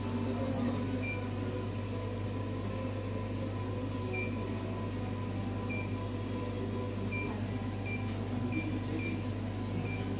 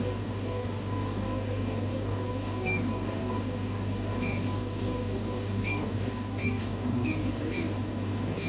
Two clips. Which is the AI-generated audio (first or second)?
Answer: second